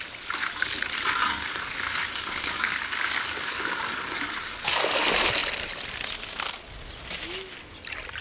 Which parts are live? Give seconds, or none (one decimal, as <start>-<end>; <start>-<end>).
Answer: 0.0-1.2; 4.9-8.2